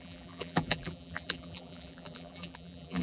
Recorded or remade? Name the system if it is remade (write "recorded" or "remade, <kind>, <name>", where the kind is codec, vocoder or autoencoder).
remade, vocoder, BigVGAN v2